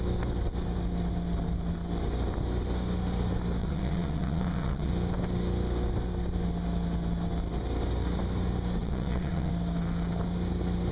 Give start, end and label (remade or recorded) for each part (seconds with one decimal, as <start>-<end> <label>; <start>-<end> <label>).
0.0-3.6 recorded; 3.6-4.9 remade; 4.9-8.8 recorded; 8.8-9.5 remade; 9.5-10.9 recorded